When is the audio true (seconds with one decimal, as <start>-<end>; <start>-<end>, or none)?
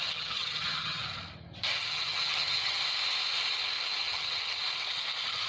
1.0-1.7; 2.8-4.0; 4.6-5.5